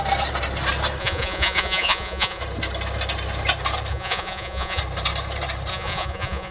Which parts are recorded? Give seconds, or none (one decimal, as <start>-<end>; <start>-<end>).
0.0-1.0; 2.4-3.9; 4.8-5.7